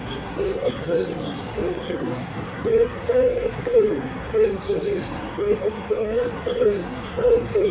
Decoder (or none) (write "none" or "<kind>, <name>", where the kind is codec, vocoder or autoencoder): codec, SNAC